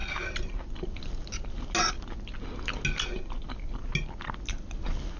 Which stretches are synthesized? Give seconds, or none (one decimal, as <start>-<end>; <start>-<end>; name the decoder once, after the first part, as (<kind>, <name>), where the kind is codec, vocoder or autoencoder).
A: none